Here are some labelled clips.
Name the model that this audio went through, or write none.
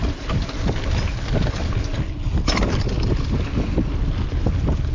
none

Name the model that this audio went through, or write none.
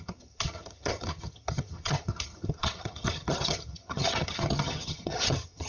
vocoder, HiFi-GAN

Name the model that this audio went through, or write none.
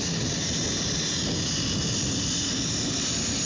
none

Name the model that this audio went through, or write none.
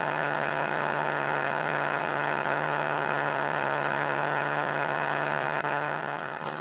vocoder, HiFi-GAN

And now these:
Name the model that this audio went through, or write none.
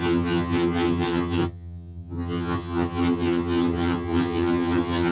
vocoder, HiFi-GAN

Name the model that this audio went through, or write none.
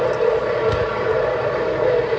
none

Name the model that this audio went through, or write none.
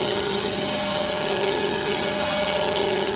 vocoder, HiFi-GAN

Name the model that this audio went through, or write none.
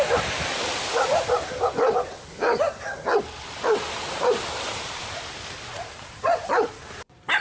none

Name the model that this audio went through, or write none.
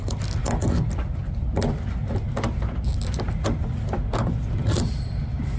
none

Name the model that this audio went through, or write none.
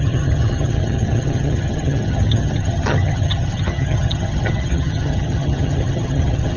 vocoder, HiFi-GAN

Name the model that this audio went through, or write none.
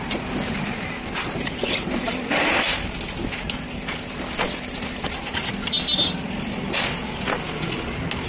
none